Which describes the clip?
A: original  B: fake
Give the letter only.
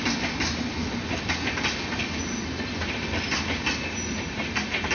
A